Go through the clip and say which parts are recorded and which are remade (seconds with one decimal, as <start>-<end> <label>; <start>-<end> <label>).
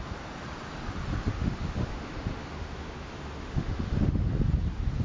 0.0-1.3 recorded; 1.3-4.3 remade; 4.3-5.0 recorded